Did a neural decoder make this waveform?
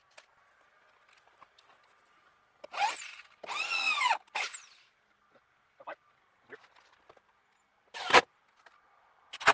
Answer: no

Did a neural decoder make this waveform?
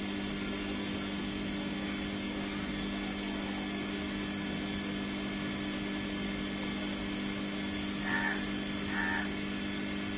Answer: no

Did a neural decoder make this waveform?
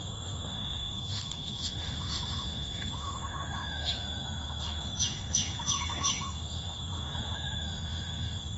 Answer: yes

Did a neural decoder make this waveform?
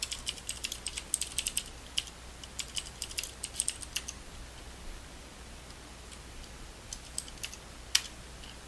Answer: no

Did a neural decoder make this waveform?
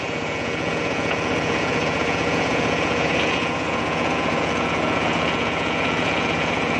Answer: yes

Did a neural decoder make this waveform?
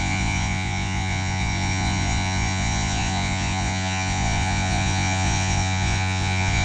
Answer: yes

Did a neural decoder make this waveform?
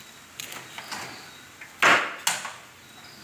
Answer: no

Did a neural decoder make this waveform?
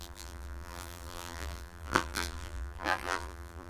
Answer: yes